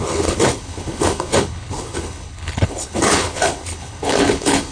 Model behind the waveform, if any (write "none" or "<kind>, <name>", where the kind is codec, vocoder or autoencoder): codec, HILCodec